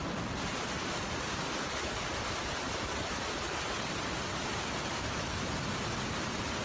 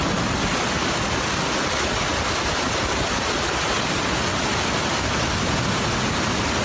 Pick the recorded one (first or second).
second